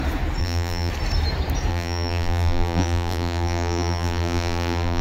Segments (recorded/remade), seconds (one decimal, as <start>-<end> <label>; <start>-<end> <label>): 0.0-0.4 recorded; 0.4-0.9 remade; 0.9-1.7 recorded; 1.7-5.0 remade